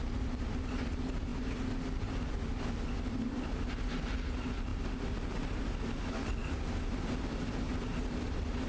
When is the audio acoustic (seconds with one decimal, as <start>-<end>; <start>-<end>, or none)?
0.0-8.7